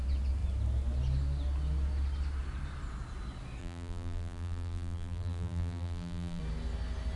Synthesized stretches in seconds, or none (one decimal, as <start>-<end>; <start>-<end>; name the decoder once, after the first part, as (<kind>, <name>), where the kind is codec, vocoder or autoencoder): 3.6-6.4 (vocoder, BigVGAN v2)